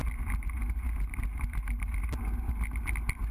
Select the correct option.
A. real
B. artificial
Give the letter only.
A